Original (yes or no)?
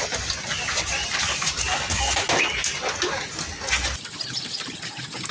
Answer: yes